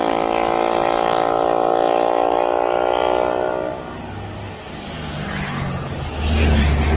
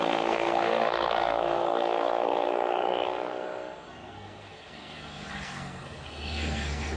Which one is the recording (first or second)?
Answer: first